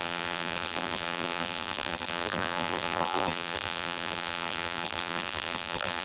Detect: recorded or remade remade